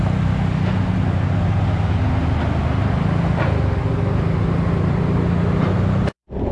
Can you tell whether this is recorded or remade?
recorded